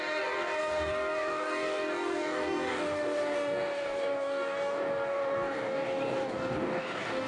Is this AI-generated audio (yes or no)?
yes